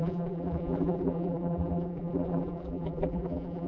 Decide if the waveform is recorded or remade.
remade